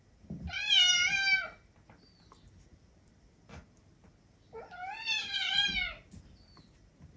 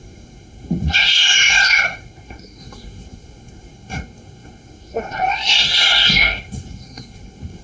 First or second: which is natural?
first